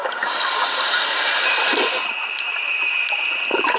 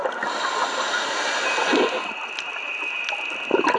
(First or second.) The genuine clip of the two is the second